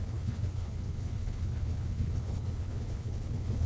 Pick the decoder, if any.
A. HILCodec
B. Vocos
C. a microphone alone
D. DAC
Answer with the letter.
A